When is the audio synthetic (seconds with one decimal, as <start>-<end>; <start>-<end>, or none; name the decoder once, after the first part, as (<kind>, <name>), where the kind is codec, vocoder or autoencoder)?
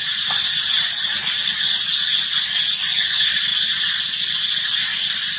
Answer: 0.0-1.1 (vocoder, BigVGAN v2)